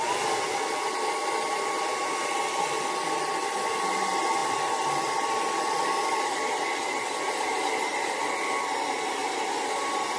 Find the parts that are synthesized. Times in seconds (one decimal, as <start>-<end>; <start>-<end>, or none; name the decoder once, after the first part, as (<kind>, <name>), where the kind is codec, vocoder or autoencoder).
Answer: 4.4-6.2 (vocoder, BigVGAN v2)